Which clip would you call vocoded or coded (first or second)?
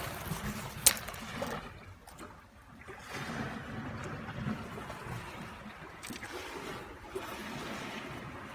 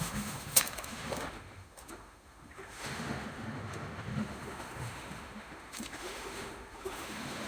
second